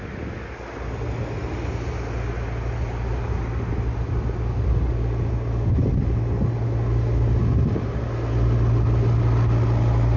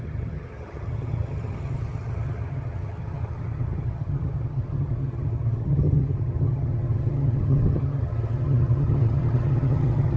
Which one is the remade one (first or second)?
second